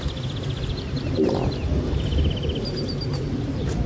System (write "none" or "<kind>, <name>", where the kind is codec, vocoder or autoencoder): none